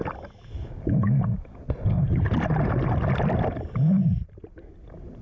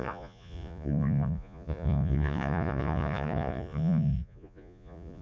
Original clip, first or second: first